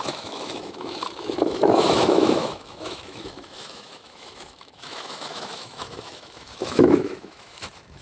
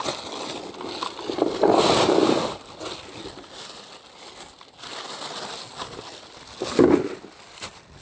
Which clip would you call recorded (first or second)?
second